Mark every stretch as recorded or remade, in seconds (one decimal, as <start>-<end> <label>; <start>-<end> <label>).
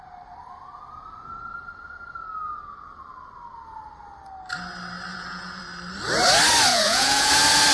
0.0-5.1 recorded; 5.1-5.6 remade; 5.6-6.7 recorded; 6.7-7.3 remade; 7.3-7.7 recorded